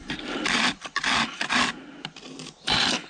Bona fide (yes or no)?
yes